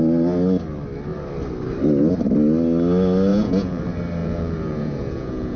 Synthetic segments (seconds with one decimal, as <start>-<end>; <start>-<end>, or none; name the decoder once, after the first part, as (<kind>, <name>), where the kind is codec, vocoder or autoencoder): 3.3-3.8 (vocoder, Vocos); 4.2-5.6